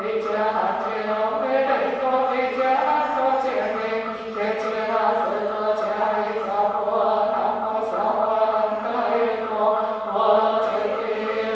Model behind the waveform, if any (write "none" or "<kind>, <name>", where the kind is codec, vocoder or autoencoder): none